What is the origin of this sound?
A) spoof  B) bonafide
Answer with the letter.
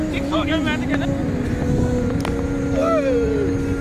B